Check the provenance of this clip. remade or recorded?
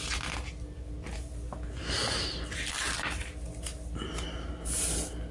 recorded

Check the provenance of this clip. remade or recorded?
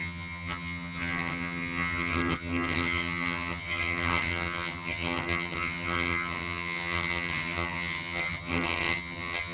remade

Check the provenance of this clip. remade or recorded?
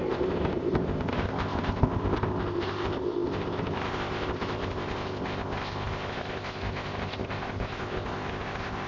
remade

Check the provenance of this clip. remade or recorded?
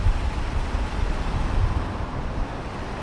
recorded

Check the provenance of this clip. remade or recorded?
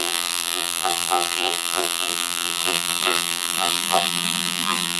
remade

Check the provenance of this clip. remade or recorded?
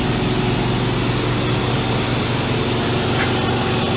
recorded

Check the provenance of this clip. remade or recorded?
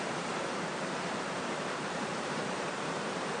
remade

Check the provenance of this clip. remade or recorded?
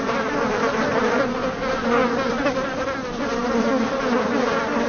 recorded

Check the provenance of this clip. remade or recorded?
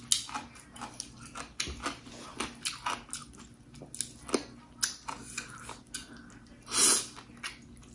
recorded